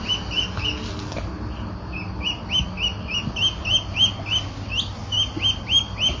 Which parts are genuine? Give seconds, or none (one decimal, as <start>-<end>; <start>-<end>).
0.0-6.2